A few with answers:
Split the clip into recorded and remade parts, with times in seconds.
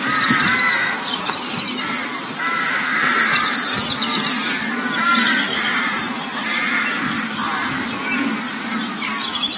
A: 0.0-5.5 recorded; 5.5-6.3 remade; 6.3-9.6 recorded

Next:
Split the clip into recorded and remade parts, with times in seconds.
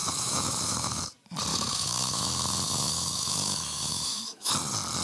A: 0.0-1.0 remade; 1.0-1.5 recorded; 1.5-4.5 remade; 4.5-5.0 recorded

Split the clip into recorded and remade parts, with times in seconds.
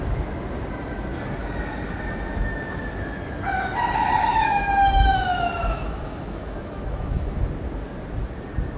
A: 0.0-4.3 recorded; 4.3-7.4 remade; 7.4-8.8 recorded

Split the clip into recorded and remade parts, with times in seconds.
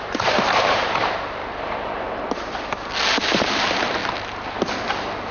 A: 0.0-1.4 remade; 1.4-3.1 recorded; 3.1-4.0 remade; 4.0-5.3 recorded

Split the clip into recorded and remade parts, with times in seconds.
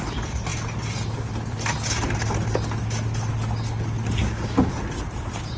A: 0.0-4.2 recorded; 4.2-4.7 remade; 4.7-5.6 recorded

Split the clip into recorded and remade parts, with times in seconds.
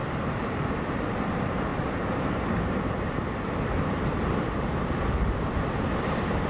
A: 0.0-6.5 remade